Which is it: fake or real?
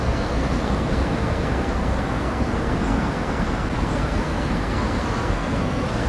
fake